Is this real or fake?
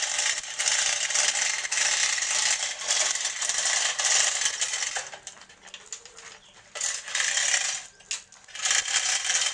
real